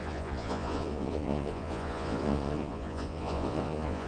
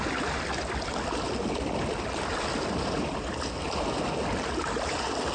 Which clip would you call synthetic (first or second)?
first